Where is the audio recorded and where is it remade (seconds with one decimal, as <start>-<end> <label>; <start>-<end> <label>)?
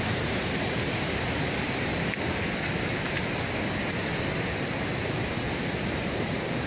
0.0-1.9 remade; 1.9-5.9 recorded; 5.9-6.7 remade